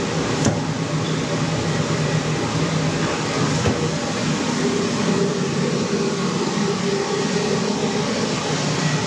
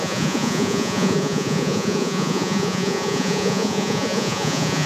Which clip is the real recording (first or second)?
first